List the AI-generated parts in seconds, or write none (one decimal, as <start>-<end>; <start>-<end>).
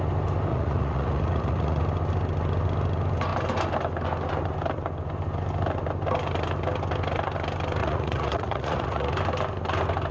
0.5-1.8; 7.8-9.1